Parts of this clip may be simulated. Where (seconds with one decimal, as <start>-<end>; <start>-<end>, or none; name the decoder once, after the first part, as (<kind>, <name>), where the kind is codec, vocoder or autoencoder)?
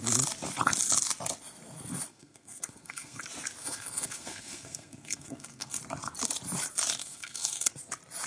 2.1-3.2 (codec, SNAC); 3.6-5.8; 7.0-7.7